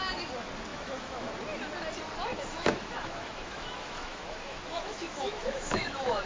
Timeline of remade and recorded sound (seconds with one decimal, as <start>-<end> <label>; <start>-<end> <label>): 0.0-0.7 recorded; 0.7-1.3 remade; 1.3-2.3 recorded; 2.3-6.3 remade